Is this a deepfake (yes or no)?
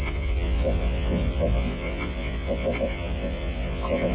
yes